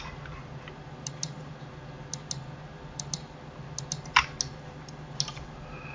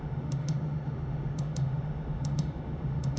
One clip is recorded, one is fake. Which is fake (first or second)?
second